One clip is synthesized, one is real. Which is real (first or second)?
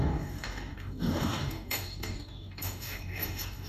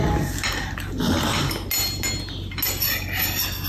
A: second